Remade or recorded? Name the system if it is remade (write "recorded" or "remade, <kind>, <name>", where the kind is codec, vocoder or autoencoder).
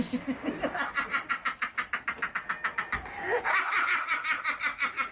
recorded